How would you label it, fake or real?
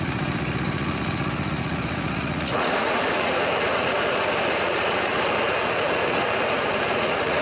fake